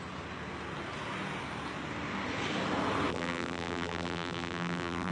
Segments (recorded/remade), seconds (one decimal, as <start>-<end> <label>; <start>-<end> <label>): 0.0-3.1 recorded; 3.1-5.1 remade